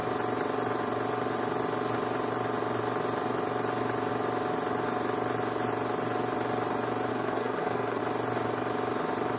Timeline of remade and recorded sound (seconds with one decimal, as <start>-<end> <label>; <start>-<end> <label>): 0.0-7.1 recorded; 7.1-8.0 remade; 8.0-9.4 recorded